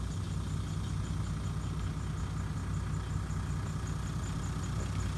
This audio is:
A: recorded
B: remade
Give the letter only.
A